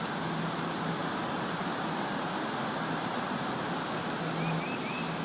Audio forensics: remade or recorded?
recorded